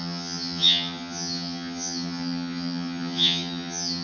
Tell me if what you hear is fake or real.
fake